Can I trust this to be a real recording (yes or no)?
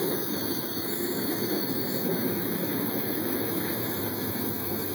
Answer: no